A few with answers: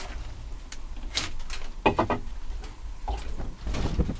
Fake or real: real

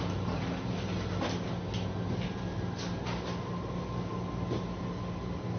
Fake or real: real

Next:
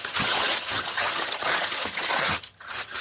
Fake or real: fake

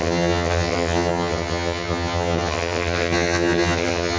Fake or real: fake